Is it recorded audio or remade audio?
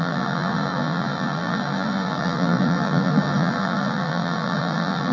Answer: remade